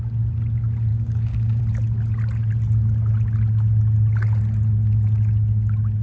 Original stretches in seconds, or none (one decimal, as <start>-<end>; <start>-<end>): 0.0-0.9; 1.6-6.0